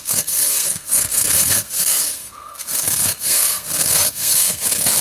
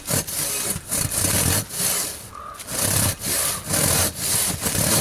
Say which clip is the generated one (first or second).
first